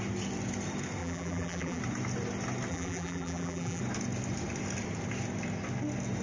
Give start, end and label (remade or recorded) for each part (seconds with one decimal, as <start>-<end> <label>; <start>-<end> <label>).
0.0-1.0 recorded; 1.0-1.8 remade; 1.8-2.7 recorded; 2.7-3.8 remade; 3.8-6.2 recorded